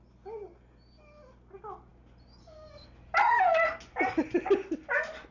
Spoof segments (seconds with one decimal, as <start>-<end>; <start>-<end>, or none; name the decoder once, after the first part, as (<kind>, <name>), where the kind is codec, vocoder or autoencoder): none